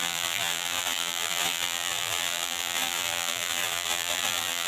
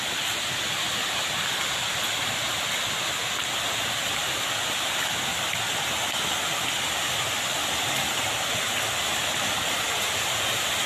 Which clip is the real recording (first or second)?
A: second